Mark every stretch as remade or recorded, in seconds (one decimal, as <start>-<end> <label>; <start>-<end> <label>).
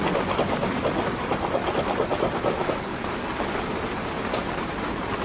0.0-5.2 recorded